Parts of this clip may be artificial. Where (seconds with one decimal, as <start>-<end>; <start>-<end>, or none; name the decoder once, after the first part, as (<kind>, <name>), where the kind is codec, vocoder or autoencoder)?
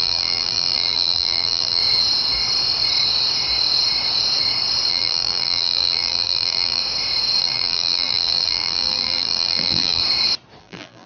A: 0.0-1.8 (vocoder, BigVGAN v2); 4.9-6.8; 7.4-10.0; 10.6-11.1